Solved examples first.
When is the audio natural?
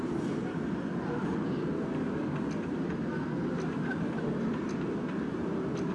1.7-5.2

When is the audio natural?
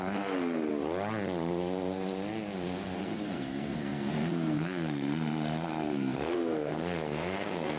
0.7-3.0